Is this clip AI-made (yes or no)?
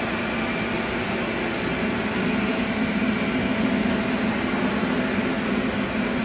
no